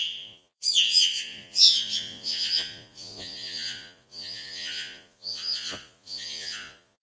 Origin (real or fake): fake